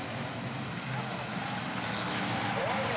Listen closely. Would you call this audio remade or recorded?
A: recorded